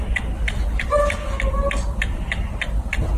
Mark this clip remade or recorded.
recorded